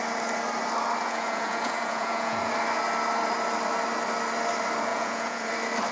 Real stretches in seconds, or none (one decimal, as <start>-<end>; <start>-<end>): 0.0-1.0; 2.5-4.9; 5.5-5.9